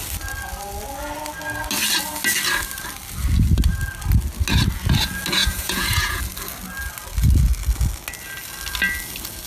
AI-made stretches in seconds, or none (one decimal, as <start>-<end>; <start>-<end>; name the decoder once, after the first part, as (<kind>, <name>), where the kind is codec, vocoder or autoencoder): 5.4-6.2 (vocoder, Vocos)